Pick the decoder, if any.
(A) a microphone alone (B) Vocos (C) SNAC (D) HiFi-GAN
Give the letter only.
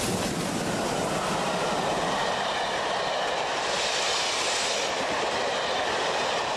A